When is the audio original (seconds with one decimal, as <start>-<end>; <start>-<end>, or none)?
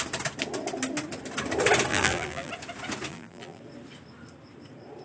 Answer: 0.0-1.9; 2.5-3.1; 3.6-5.0